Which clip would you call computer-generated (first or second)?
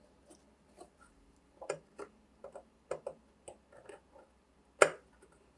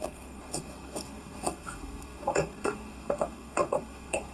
second